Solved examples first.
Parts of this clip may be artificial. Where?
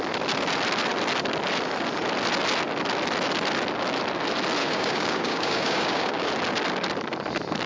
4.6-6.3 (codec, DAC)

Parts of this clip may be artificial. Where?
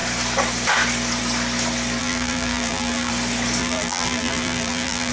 2.0-3.1 (vocoder, BigVGAN v2); 3.6-5.1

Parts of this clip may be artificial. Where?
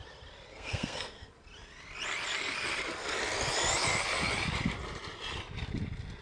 0.5-1.3 (codec, SNAC)